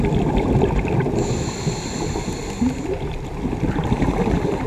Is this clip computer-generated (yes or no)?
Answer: no